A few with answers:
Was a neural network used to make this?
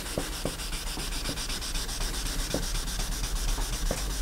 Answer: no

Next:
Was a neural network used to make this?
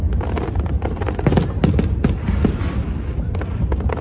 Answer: no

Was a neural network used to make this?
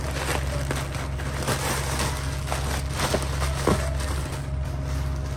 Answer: no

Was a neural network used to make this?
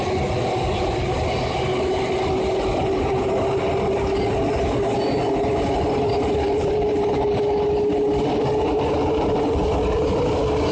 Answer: no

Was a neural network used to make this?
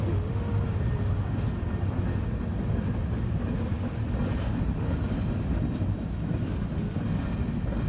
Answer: no